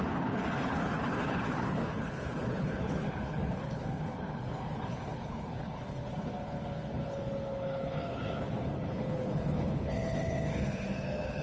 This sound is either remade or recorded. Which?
remade